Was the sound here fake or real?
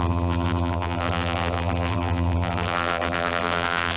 fake